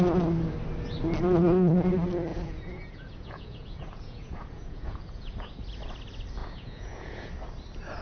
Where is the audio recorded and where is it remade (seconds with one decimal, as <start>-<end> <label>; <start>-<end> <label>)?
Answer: 0.0-2.3 recorded; 2.3-5.5 remade; 5.5-6.4 recorded; 6.4-7.3 remade; 7.3-8.0 recorded